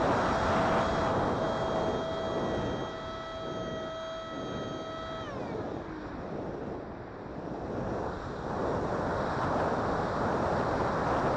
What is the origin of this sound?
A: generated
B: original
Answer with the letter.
B